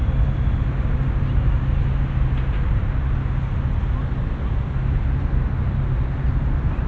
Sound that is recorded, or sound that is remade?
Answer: recorded